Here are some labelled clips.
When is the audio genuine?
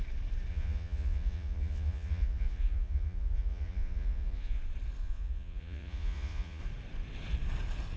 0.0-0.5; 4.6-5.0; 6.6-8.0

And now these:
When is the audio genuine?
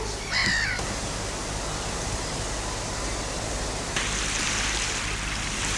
0.0-5.8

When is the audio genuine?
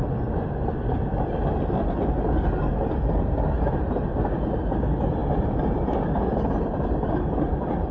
0.0-7.9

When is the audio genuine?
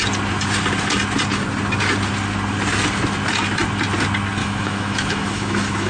0.0-4.4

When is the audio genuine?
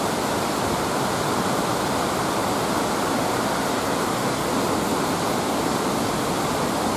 2.4-3.3; 4.9-5.5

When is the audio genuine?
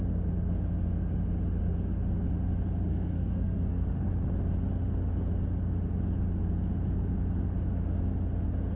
0.0-2.9; 4.1-8.8